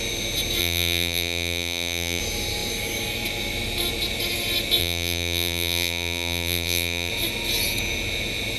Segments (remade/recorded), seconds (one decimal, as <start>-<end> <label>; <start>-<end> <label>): 0.0-0.6 recorded; 0.6-2.2 remade; 2.2-4.8 recorded; 4.8-7.1 remade; 7.1-8.6 recorded